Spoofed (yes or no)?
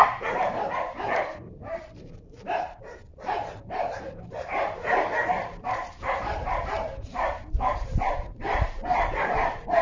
yes